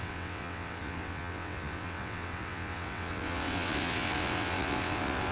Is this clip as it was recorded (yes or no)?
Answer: no